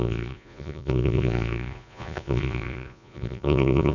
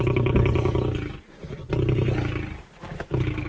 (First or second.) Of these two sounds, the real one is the second